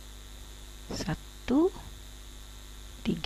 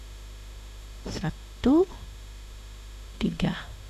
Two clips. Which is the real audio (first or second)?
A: first